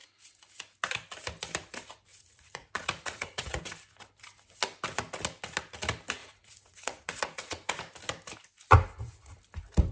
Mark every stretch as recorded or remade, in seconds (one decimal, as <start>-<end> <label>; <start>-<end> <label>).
0.0-2.1 recorded; 2.1-3.6 remade; 3.6-6.2 recorded; 6.2-7.8 remade; 7.8-9.9 recorded